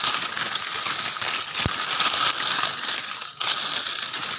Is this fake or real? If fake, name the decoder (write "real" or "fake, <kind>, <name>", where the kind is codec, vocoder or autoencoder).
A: real